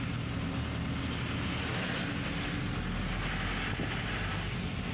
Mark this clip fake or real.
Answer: real